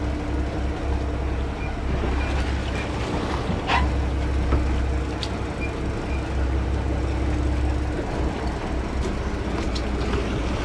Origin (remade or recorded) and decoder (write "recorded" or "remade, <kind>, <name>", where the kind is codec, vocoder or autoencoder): recorded